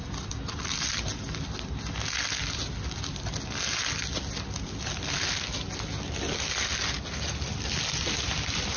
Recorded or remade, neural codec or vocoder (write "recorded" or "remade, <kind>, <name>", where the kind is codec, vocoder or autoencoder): recorded